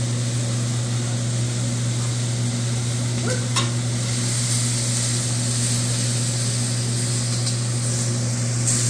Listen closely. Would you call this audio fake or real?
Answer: real